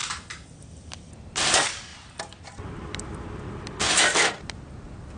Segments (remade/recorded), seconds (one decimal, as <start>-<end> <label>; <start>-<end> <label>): 0.0-5.2 recorded

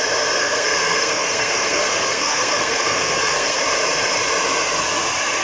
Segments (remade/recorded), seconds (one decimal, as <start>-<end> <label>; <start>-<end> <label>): 0.0-0.4 recorded; 0.4-3.6 remade; 3.6-5.4 recorded

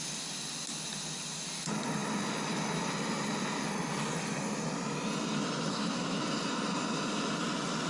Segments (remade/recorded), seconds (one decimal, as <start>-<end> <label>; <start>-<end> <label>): 0.0-5.7 recorded; 5.7-6.2 remade; 6.2-7.9 recorded

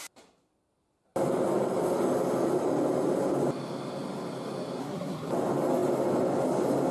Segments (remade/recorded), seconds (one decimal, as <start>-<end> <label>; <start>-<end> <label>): 0.0-4.8 recorded; 4.8-5.3 remade; 5.3-6.9 recorded

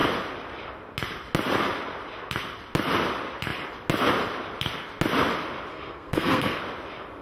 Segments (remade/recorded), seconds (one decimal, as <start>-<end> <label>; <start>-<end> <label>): 0.0-5.7 recorded; 5.7-6.6 remade; 6.6-7.2 recorded

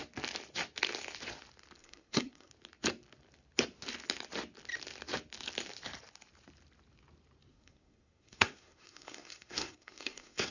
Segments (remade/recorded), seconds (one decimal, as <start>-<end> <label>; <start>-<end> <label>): 0.0-1.8 recorded; 1.8-2.5 remade; 2.5-7.5 recorded; 7.5-10.5 remade